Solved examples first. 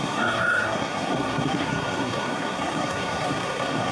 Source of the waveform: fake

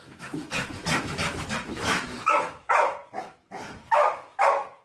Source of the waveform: fake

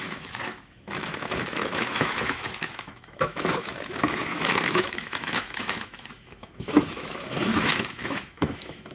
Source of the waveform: fake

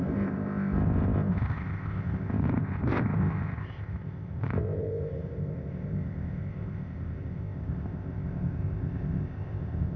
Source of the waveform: fake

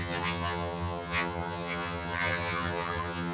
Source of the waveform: fake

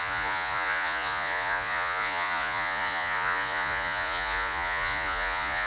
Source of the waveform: fake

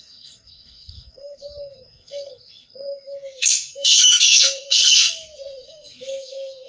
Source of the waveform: fake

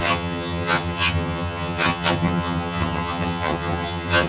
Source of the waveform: fake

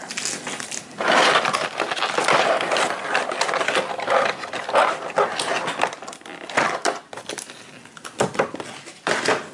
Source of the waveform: real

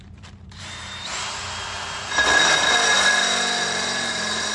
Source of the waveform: fake